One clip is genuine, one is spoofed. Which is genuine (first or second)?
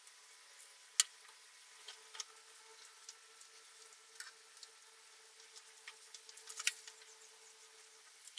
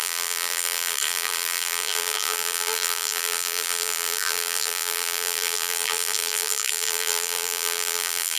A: first